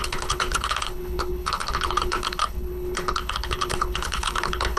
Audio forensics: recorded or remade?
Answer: remade